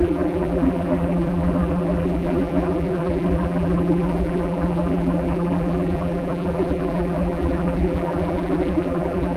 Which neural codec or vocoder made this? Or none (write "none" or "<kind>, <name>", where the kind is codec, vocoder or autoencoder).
vocoder, BigVGAN v2